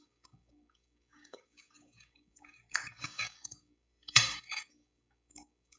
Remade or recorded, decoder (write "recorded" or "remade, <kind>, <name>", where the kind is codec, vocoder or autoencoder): remade, codec, DAC